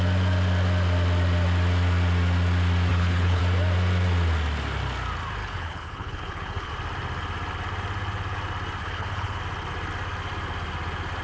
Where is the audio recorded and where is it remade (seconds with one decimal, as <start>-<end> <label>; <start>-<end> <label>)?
0.0-2.9 recorded; 2.9-3.4 remade; 3.4-5.4 recorded; 5.4-6.7 remade; 6.7-8.8 recorded; 8.8-9.4 remade; 9.4-11.2 recorded